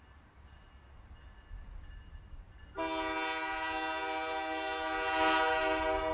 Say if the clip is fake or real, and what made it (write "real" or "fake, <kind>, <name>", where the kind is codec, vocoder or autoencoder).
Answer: real